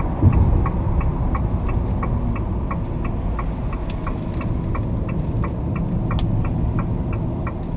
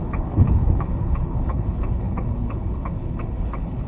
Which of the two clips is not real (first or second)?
second